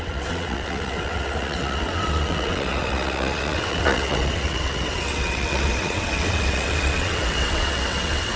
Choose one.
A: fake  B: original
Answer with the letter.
A